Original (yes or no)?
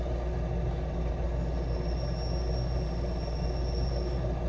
yes